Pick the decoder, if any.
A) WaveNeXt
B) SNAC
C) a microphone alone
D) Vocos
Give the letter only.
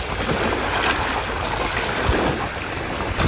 C